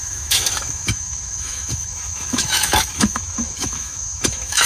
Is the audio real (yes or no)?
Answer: no